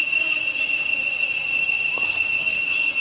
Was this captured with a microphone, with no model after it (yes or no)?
yes